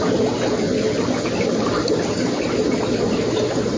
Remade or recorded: recorded